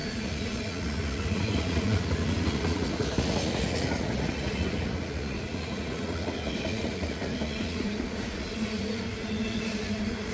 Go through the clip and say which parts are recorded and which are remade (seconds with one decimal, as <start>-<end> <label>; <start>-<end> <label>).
0.0-10.3 remade